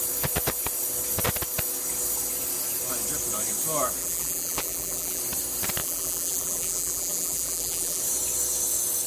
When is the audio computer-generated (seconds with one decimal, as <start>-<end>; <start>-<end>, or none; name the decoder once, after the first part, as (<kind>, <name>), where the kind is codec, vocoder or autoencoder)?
4.0-5.2 (vocoder, BigVGAN v2); 5.8-8.0